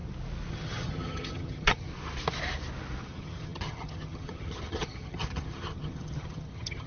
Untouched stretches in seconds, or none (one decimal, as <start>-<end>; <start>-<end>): 0.0-0.5; 1.9-3.0

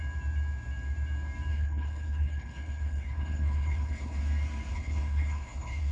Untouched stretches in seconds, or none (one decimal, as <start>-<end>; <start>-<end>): 0.0-1.5; 4.2-4.7

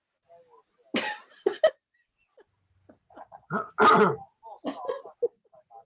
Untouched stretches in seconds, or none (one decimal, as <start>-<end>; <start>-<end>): 0.0-3.0; 3.7-5.8

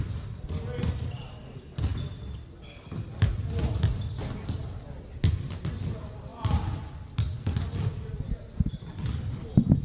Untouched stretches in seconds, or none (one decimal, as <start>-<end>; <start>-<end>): 0.0-9.8

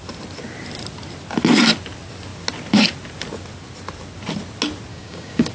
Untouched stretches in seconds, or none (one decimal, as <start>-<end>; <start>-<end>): 0.0-4.9

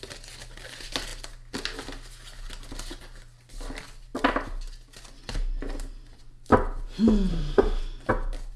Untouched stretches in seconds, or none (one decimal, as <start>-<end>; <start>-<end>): 0.0-7.3; 7.8-8.6

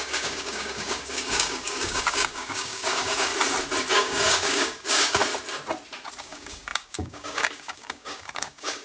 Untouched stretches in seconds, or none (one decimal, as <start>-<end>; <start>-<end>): 3.3-3.9; 5.2-6.2